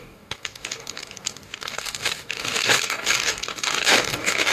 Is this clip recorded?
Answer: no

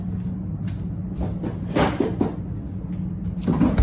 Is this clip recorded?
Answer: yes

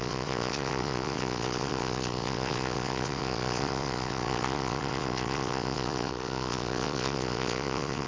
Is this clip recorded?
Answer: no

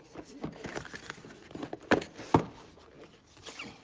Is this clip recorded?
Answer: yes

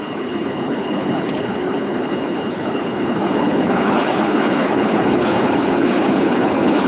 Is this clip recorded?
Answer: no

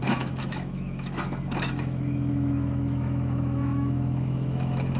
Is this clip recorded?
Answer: no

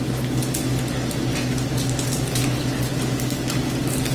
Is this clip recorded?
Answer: yes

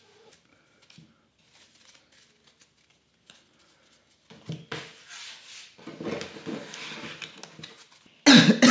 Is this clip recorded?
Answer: yes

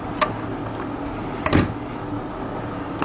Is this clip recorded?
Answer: yes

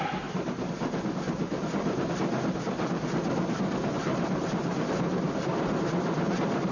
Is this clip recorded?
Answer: yes